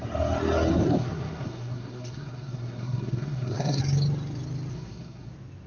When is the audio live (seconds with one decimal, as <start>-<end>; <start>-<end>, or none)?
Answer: 0.0-0.7; 3.8-4.7; 5.3-5.7